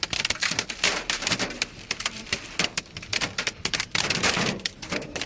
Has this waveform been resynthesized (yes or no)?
yes